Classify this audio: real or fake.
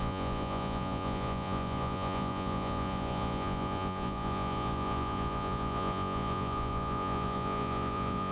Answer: fake